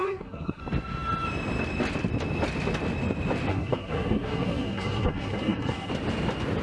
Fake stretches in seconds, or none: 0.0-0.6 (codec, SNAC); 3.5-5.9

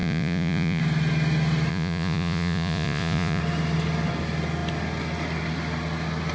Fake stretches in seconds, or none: 0.0-0.8 (vocoder, Vocos); 1.7-3.4